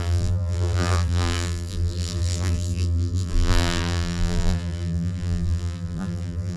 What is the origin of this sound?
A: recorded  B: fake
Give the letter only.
B